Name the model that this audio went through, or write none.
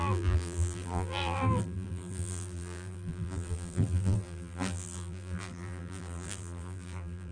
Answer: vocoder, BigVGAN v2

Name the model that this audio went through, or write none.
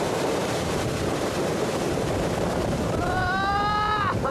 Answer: vocoder, BigVGAN v2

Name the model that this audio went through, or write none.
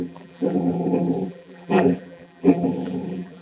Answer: vocoder, BigVGAN v2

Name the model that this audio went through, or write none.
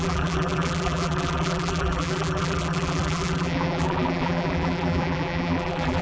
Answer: vocoder, BigVGAN v2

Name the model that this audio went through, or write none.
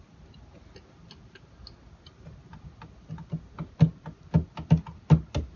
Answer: none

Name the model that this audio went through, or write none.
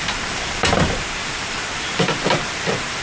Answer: vocoder, BigVGAN v2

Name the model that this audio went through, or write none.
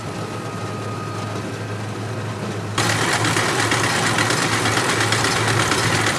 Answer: none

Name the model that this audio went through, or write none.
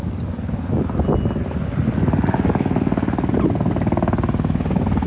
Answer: none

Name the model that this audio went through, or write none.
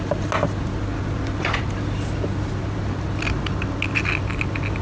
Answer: none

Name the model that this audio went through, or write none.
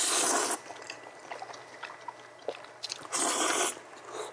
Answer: none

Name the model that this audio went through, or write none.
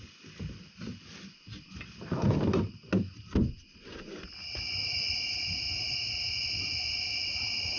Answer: none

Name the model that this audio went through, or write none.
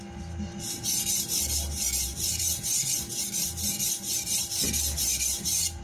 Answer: none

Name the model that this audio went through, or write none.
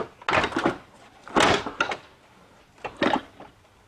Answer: none